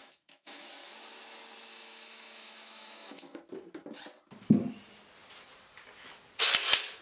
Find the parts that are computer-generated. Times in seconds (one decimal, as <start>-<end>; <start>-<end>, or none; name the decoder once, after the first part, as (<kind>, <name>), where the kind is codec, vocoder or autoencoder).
0.0-0.7 (autoencoder, DAC-VAE); 1.7-3.4